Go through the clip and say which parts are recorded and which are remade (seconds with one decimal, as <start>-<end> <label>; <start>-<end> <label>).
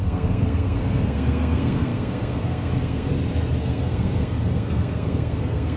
0.0-3.1 remade; 3.1-3.6 recorded; 3.6-5.8 remade